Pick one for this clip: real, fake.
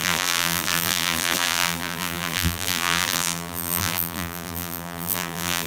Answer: fake